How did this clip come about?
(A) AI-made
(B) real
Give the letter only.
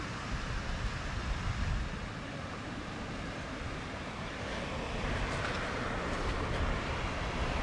B